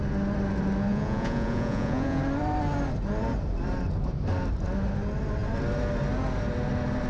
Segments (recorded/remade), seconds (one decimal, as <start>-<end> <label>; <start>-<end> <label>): 0.0-0.9 recorded; 0.9-2.2 remade; 2.2-7.1 recorded